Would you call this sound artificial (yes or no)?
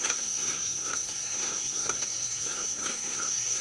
yes